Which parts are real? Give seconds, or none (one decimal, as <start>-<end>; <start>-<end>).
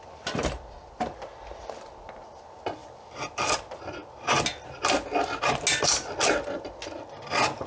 0.0-2.8; 3.6-7.7